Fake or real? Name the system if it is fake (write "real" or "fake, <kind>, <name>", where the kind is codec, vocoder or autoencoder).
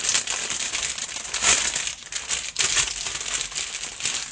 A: real